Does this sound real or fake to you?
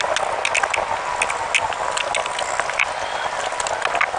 real